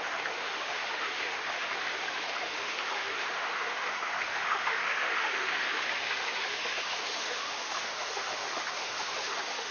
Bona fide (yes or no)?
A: no